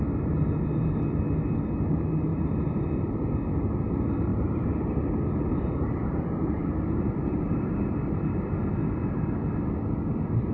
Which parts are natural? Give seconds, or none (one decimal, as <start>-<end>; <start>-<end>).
0.0-2.3; 3.1-4.3; 8.5-10.5